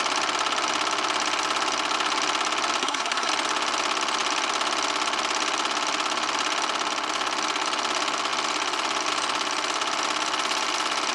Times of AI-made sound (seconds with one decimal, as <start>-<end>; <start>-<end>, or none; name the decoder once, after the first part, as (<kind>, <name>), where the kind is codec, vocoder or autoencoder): 2.8-3.3 (codec, SNAC)